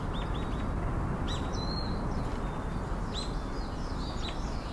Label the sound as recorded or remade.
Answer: recorded